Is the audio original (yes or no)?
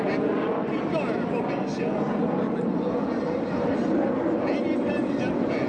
yes